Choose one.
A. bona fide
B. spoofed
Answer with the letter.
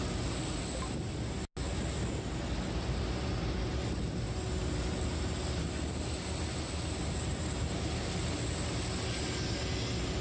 A